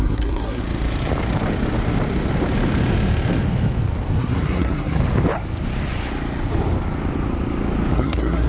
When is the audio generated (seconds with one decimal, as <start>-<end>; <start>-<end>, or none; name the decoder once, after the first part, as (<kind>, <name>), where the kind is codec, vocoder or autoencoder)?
0.0-0.6 (codec, SNAC); 4.1-5.0; 7.9-8.5